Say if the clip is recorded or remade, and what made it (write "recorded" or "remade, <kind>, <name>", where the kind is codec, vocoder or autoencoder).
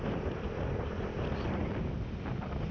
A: recorded